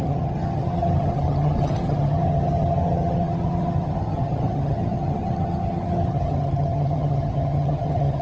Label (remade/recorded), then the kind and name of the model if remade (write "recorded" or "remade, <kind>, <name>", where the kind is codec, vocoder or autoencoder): remade, vocoder, HiFi-GAN